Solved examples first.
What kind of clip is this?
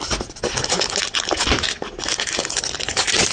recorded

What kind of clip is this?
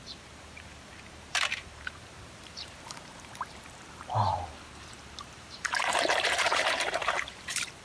remade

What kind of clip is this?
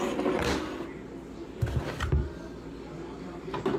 recorded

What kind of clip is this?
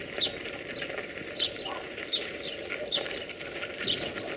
recorded